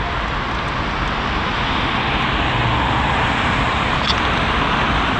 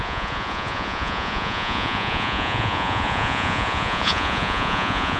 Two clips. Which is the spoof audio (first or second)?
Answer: second